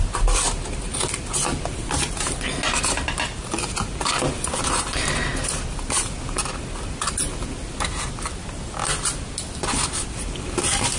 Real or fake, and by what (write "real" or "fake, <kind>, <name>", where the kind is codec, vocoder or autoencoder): real